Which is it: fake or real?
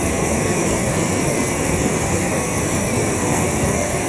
fake